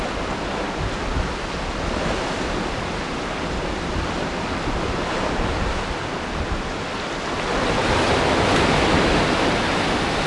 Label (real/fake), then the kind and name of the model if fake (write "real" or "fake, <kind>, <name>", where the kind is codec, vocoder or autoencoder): real